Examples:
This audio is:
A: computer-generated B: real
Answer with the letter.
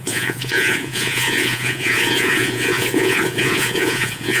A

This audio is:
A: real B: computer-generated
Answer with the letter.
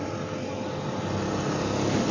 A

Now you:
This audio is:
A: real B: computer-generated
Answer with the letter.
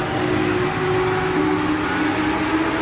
A